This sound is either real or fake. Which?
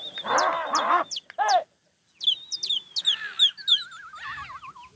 real